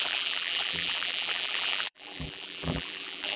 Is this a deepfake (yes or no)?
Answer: yes